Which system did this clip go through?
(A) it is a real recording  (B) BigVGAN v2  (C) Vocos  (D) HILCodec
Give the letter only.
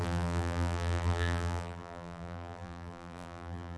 B